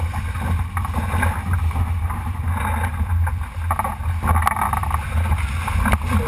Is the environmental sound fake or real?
real